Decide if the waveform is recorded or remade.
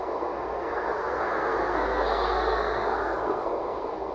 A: remade